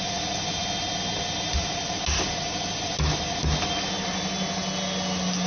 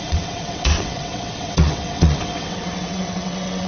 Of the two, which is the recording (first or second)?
first